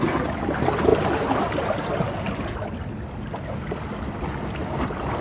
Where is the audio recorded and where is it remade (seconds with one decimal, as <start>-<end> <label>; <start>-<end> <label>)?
0.0-5.2 recorded